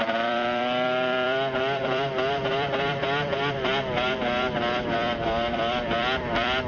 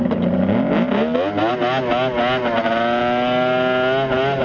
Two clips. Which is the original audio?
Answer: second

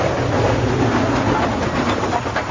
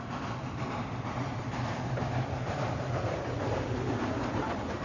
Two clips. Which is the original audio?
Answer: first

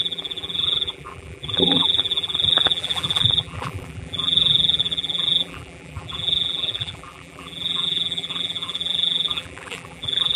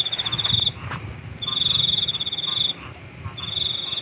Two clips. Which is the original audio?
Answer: second